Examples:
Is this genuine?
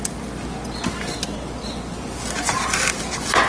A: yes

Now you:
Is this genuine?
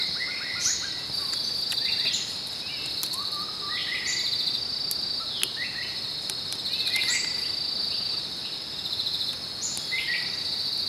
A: yes